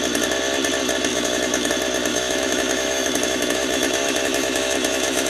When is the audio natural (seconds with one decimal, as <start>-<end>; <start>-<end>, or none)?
0.0-1.1; 1.7-2.1